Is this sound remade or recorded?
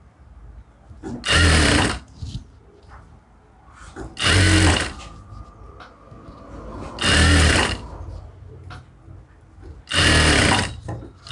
recorded